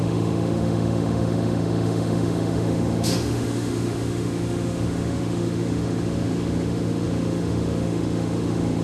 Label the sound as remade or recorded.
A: remade